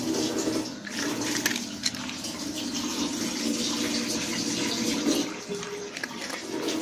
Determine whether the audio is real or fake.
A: real